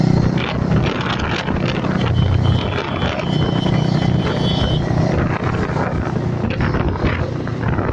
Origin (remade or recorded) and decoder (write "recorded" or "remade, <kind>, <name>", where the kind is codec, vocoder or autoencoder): recorded